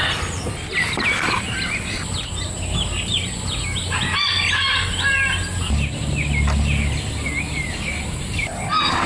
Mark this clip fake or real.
real